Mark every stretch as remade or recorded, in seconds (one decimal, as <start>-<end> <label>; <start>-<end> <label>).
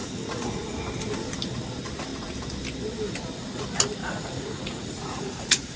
0.0-0.8 remade; 0.8-4.0 recorded; 4.0-5.8 remade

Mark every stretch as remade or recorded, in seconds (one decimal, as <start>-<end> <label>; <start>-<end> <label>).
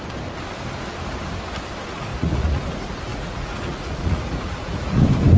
0.0-2.1 recorded; 2.1-2.6 remade; 2.6-3.1 recorded; 3.1-5.0 remade; 5.0-5.4 recorded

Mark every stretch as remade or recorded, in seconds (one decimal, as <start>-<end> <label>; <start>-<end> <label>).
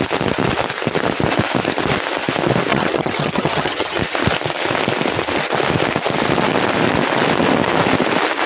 0.0-2.7 recorded; 2.7-4.0 remade; 4.0-8.5 recorded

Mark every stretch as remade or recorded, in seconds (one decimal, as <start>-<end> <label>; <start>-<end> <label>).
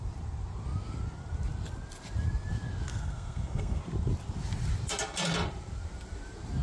0.0-2.9 recorded; 2.9-3.8 remade; 3.8-6.6 recorded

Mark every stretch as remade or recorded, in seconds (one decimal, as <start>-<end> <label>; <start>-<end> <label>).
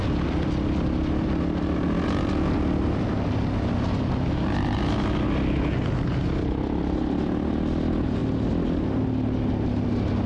0.0-10.3 recorded